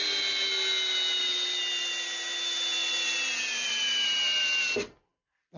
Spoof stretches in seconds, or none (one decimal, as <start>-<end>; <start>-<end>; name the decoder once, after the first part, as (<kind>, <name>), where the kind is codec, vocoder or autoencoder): 2.8-3.7 (vocoder, BigVGAN v2)